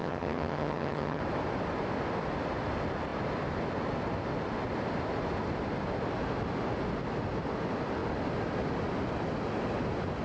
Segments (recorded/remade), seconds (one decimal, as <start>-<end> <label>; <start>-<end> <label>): 0.0-1.2 remade; 1.2-10.2 recorded